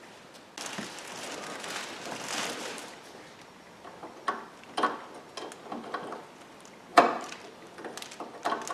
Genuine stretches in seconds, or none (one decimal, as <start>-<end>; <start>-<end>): 0.0-6.9; 8.0-8.7